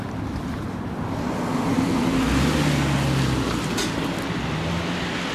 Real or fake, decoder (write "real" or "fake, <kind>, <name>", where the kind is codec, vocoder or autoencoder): real